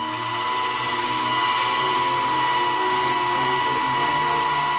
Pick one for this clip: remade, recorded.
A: recorded